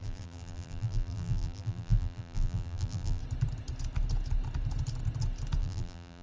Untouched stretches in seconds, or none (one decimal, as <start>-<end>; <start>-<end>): 3.2-5.6